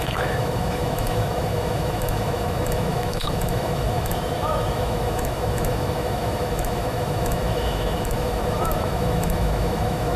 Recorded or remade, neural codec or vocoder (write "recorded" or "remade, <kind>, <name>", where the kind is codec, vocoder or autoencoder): remade, autoencoder, DAC-VAE